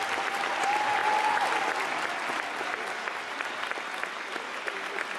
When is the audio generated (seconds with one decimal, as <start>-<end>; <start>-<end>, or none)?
none